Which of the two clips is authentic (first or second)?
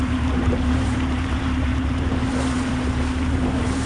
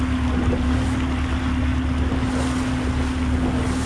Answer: second